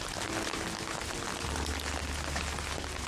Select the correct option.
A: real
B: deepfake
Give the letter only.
A